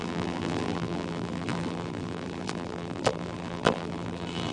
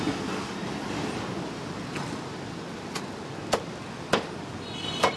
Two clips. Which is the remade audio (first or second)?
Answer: first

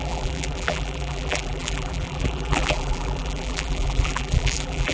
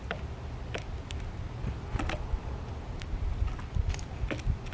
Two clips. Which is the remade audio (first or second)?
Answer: first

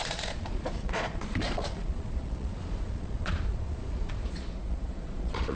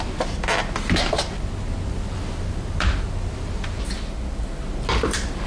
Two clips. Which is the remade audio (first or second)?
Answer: first